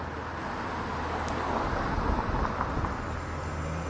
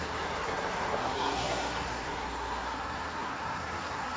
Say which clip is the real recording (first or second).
first